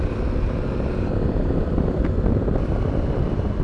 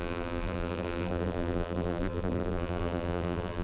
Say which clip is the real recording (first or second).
first